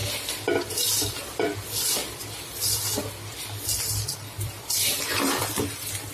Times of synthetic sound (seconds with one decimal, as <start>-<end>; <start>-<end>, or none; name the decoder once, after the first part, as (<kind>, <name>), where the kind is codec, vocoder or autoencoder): 0.7-6.1 (vocoder, BigVGAN v2)